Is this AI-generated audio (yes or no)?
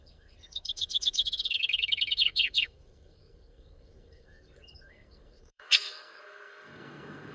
yes